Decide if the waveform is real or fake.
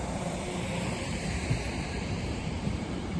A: fake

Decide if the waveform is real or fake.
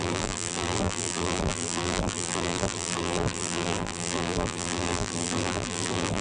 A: fake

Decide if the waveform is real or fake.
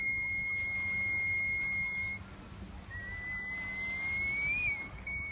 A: real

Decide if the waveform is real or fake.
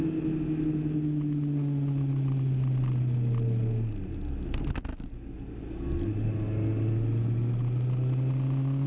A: real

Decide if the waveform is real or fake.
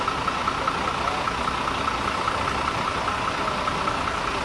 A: real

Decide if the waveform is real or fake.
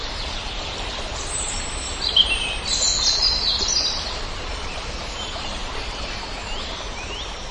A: fake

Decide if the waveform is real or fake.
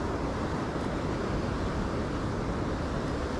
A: real